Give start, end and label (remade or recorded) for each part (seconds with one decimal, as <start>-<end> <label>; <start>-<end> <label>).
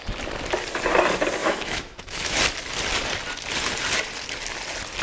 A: 0.0-1.4 recorded; 1.4-2.4 remade; 2.4-5.0 recorded